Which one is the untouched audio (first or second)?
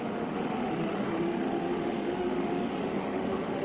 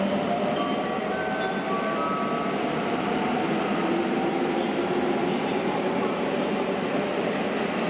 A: second